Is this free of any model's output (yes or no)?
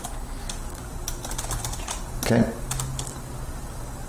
yes